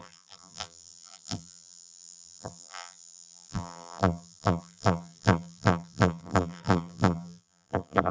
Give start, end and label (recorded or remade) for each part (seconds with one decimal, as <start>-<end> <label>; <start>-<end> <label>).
0.0-8.1 remade